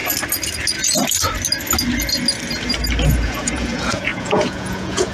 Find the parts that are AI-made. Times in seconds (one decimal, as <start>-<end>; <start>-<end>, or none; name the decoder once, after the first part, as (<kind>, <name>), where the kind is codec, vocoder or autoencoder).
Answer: 3.1-5.1 (vocoder, Vocos)